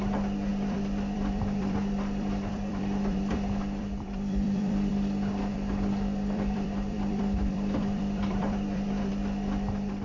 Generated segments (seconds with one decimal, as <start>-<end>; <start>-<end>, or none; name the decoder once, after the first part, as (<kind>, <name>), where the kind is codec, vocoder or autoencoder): 0.5-4.9 (vocoder, BigVGAN v2); 5.5-9.1